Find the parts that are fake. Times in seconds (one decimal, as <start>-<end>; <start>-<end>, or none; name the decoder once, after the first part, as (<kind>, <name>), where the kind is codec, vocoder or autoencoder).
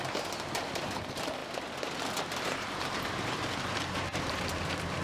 1.4-4.4 (vocoder, BigVGAN v2)